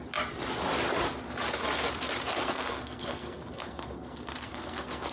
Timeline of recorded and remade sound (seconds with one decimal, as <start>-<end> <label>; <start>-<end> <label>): 0.0-2.3 recorded; 2.3-5.1 remade